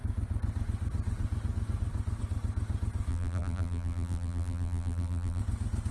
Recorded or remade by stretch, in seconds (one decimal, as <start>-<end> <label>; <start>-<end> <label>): 0.0-3.1 recorded; 3.1-5.4 remade; 5.4-5.9 recorded